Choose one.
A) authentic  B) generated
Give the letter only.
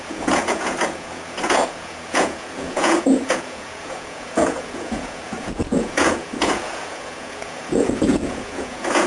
B